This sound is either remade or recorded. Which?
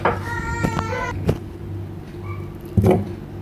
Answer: recorded